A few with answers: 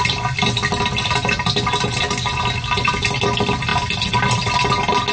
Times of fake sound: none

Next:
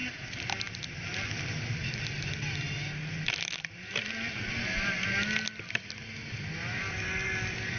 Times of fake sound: none

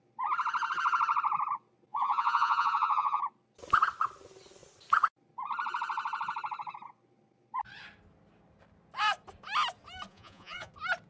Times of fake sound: 1.9-3.2; 10.1-10.7

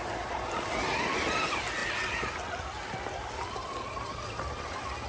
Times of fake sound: none